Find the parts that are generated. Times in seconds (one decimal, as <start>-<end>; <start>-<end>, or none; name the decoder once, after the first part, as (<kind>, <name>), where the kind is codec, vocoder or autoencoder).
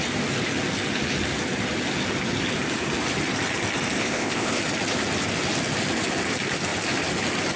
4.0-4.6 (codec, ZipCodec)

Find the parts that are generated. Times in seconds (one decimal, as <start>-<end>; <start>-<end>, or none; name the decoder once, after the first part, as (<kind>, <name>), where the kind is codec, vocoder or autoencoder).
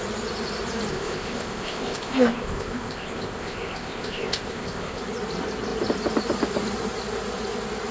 0.9-5.0 (codec, ZipCodec)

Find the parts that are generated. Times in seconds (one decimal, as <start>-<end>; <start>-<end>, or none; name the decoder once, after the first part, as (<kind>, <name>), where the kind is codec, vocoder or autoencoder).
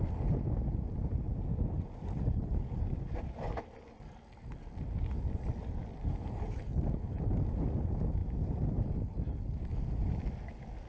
none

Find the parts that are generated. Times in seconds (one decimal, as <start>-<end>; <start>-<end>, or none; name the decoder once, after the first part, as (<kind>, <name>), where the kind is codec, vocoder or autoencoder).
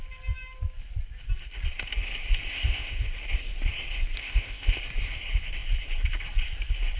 2.5-3.1 (codec, ZipCodec); 4.2-4.8